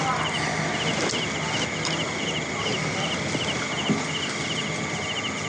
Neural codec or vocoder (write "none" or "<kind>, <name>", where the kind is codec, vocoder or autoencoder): none